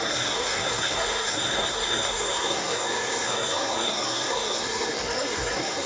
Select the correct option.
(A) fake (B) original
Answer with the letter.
A